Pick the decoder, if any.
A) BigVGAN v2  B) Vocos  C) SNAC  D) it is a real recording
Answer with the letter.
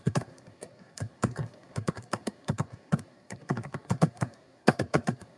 C